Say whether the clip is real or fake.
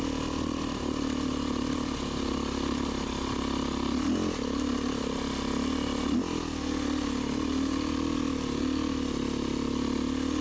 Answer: real